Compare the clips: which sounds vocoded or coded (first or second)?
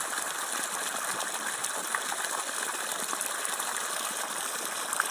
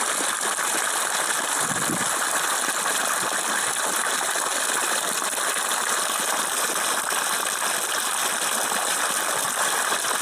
first